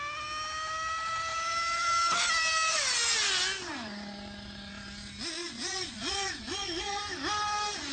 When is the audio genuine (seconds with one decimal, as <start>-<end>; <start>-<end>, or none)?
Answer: 0.0-5.4; 7.0-7.9